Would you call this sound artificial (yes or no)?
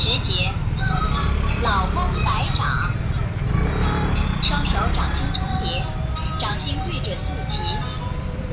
no